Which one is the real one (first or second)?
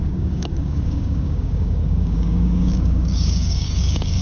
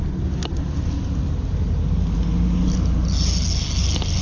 second